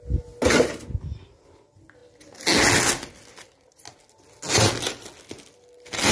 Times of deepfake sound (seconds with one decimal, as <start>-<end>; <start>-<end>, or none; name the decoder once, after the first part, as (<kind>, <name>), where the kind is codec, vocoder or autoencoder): none